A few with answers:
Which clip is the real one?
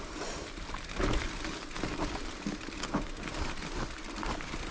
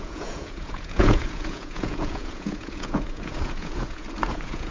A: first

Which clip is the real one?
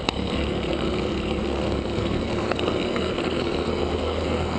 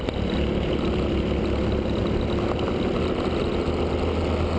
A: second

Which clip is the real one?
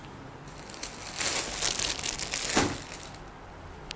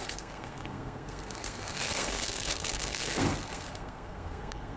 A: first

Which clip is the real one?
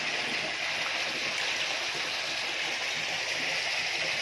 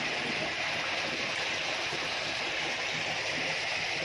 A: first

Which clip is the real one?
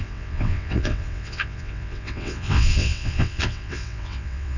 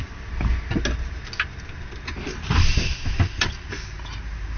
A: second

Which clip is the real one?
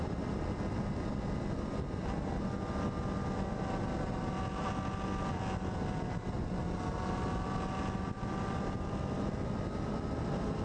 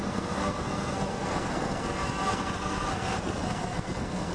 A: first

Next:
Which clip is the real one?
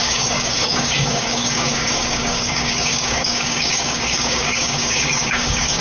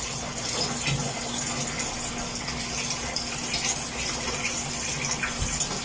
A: second